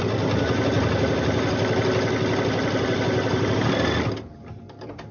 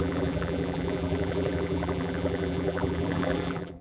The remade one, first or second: second